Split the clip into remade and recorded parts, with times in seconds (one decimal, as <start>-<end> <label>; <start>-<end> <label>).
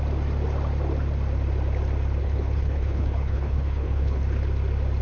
0.0-2.2 recorded; 2.2-4.2 remade; 4.2-5.0 recorded